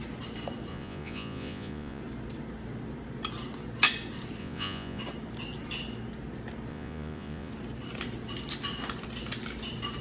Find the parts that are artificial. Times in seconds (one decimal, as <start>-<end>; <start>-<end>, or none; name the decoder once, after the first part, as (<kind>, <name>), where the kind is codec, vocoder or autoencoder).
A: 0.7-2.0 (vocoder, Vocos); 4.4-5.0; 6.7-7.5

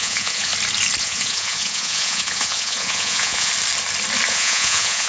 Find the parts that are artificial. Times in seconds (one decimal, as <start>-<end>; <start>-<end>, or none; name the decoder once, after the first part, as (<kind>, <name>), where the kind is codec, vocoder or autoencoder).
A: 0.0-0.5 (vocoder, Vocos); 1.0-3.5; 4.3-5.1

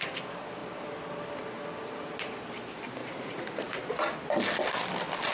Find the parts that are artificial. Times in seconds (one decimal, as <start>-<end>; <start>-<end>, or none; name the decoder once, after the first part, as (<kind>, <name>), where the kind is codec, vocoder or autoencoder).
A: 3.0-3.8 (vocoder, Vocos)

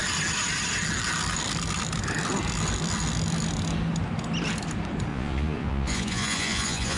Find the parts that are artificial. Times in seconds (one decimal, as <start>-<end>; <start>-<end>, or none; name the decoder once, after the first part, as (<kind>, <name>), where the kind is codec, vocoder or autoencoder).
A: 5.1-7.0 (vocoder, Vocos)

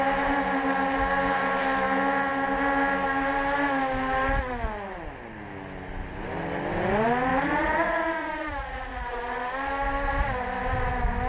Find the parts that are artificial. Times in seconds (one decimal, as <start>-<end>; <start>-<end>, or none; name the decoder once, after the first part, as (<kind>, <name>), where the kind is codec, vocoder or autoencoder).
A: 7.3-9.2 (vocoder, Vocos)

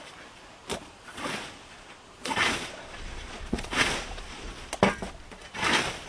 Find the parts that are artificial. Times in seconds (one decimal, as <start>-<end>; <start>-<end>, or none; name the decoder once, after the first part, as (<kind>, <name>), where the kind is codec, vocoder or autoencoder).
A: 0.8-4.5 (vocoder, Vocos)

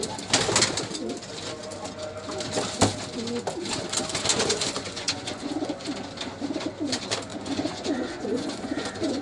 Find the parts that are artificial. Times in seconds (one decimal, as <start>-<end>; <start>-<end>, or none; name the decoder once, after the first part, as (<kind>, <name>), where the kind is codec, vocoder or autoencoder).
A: 4.3-5.9 (vocoder, Vocos); 7.3-9.2